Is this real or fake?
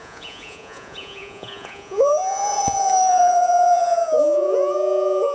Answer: fake